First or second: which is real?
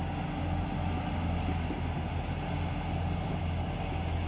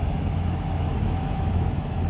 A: first